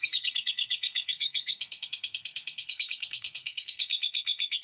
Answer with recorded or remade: remade